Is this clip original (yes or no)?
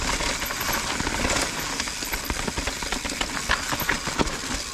yes